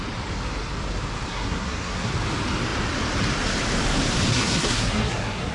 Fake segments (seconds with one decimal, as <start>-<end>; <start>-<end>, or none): 1.3-2.1; 4.3-5.5

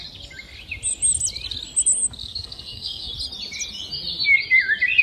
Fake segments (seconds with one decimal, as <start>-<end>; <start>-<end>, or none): 2.2-3.1